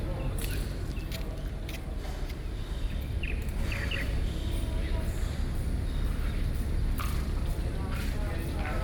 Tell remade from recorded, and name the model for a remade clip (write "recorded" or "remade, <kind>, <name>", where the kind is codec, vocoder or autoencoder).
recorded